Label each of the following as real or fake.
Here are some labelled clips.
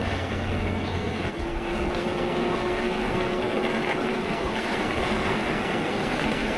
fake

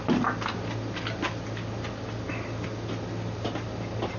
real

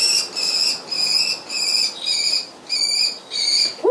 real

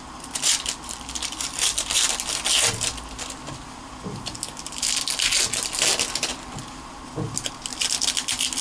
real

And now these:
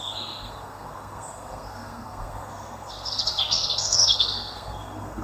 fake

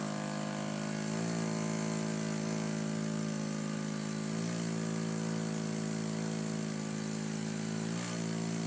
real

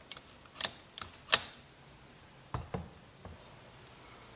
real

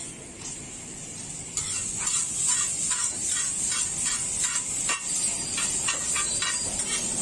real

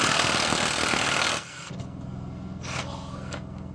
fake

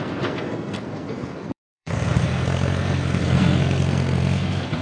fake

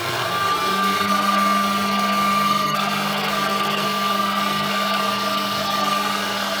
fake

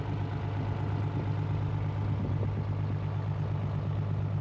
real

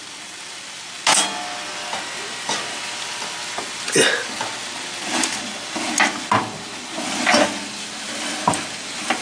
real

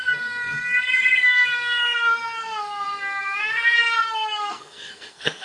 fake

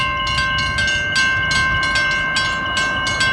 real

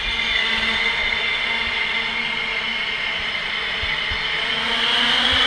real